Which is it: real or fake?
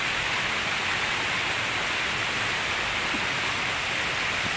real